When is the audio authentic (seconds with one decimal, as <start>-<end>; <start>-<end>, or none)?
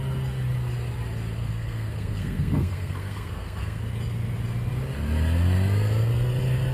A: 0.0-1.4; 3.8-6.7